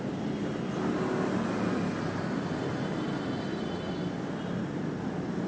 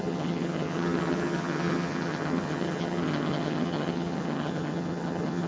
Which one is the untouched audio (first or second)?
first